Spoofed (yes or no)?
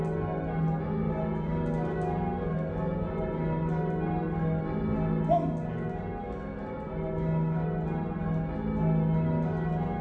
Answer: no